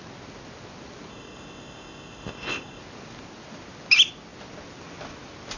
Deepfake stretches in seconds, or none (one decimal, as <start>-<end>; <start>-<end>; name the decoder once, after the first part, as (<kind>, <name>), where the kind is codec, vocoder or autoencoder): 1.1-2.8 (codec, ZipCodec)